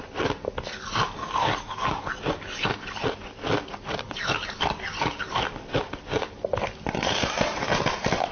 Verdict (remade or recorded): recorded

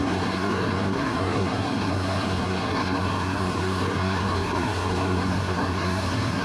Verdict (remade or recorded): remade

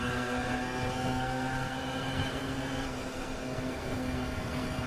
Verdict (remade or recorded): remade